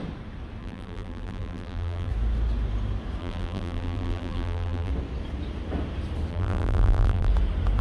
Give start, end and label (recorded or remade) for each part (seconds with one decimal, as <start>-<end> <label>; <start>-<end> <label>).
0.0-0.6 recorded; 0.6-2.1 remade; 2.1-3.2 recorded; 3.2-4.9 remade; 4.9-6.3 recorded; 6.3-7.3 remade; 7.3-7.8 recorded